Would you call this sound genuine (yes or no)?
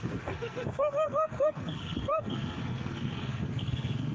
no